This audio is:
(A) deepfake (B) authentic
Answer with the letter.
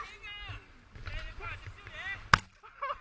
B